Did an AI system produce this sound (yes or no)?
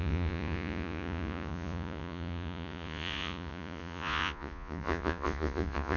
yes